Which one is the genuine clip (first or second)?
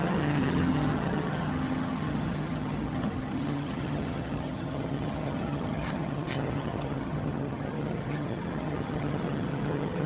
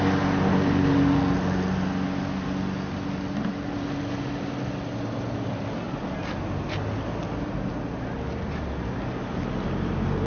second